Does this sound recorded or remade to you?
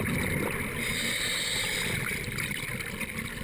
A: recorded